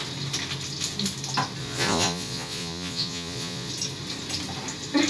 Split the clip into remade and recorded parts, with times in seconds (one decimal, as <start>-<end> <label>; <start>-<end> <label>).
0.0-1.6 recorded; 1.6-3.7 remade; 3.7-5.1 recorded

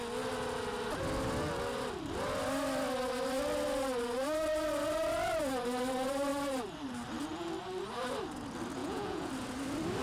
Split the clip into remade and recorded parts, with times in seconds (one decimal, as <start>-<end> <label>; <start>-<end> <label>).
0.0-8.8 recorded; 8.8-9.3 remade; 9.3-10.0 recorded

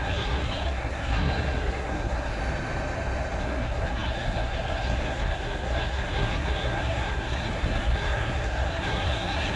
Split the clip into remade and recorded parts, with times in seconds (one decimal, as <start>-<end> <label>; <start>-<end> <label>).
0.0-2.4 remade; 2.4-3.4 recorded; 3.4-9.6 remade